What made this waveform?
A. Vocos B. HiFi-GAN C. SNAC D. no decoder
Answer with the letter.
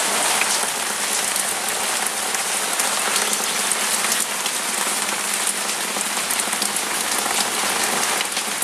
D